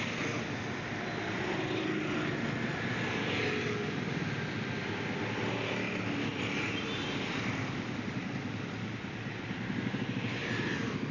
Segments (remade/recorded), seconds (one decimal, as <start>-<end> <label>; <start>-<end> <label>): 0.0-11.1 recorded